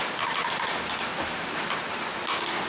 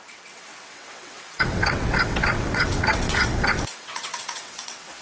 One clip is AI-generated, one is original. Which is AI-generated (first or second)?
second